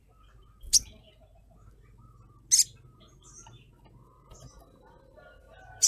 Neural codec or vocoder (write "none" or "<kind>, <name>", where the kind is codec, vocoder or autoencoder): none